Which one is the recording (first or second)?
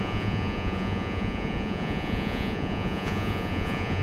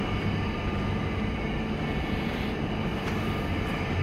second